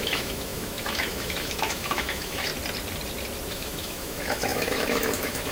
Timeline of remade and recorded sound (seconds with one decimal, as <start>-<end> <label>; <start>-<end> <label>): 0.0-2.5 remade; 2.5-3.5 recorded; 3.5-5.5 remade

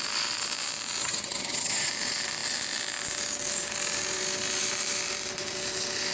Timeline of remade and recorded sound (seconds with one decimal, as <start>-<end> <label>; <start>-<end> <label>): 0.0-1.0 recorded; 1.0-1.9 remade; 1.9-6.1 recorded

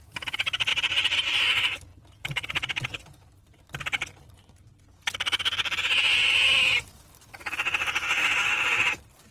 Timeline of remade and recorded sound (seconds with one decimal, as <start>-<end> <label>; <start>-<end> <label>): 0.0-0.7 recorded; 0.7-1.2 remade; 1.2-1.9 recorded; 1.9-3.7 remade; 3.7-6.1 recorded; 6.1-6.7 remade; 6.7-9.3 recorded

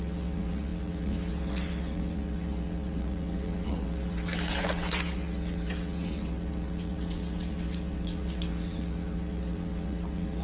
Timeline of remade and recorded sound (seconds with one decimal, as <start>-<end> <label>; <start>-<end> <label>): 0.0-10.4 remade

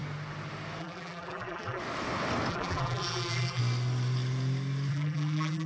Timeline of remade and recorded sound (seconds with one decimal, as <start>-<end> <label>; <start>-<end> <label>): 0.0-0.8 recorded; 0.8-1.8 remade; 1.8-2.5 recorded; 2.5-3.6 remade; 3.6-4.9 recorded; 4.9-5.7 remade

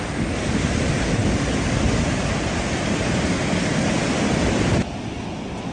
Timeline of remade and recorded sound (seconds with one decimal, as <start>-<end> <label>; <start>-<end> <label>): 0.0-5.7 recorded

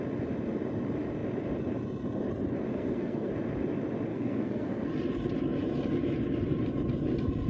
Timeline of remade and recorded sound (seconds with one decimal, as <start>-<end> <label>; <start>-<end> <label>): 0.0-2.7 recorded; 2.7-3.3 remade; 3.3-4.1 recorded; 4.1-4.9 remade; 4.9-7.5 recorded